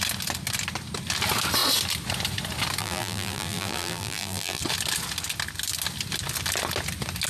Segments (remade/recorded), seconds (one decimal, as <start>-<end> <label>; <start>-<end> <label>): 0.0-2.8 recorded; 2.8-4.6 remade; 4.6-7.3 recorded